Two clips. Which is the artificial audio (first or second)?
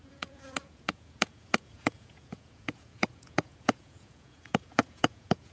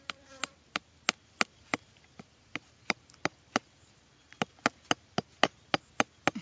first